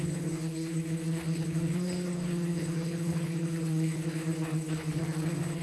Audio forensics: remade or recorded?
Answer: remade